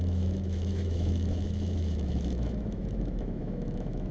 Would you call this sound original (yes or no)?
no